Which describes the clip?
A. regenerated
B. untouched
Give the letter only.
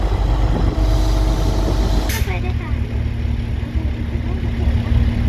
B